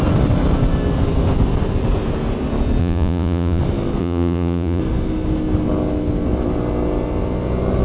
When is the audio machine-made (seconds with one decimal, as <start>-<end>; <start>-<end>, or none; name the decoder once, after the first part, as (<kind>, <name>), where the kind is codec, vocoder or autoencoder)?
2.8-3.6 (vocoder, Vocos); 4.0-4.8